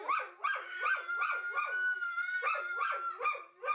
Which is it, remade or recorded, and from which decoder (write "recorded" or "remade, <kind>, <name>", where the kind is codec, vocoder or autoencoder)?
recorded